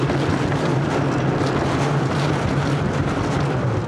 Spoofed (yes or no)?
no